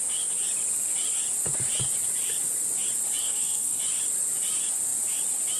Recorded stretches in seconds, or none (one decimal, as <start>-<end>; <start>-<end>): 0.0-3.2; 3.8-5.6

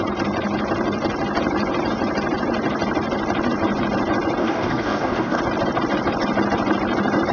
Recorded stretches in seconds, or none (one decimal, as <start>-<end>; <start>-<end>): 0.0-4.4; 5.4-7.3